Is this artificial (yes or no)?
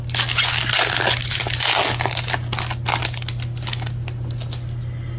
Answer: no